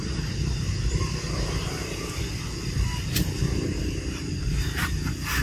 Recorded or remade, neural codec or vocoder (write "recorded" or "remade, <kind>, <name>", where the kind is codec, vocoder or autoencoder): recorded